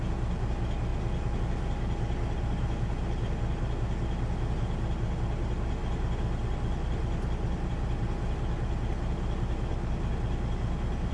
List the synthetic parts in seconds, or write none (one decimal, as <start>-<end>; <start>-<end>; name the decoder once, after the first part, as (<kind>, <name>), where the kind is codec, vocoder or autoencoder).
none